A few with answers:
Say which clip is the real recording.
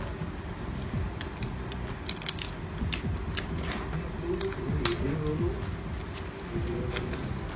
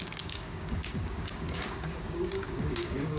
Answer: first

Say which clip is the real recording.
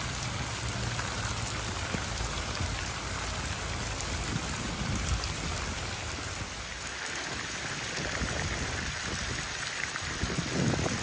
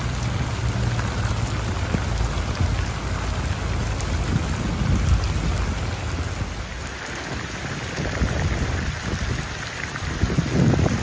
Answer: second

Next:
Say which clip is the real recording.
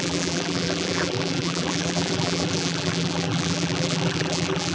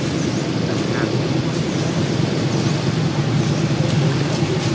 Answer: second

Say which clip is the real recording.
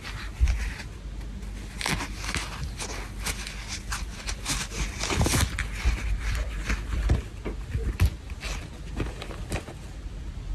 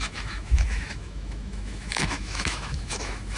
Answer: first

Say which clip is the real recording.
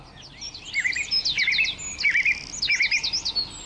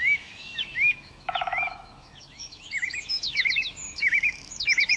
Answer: first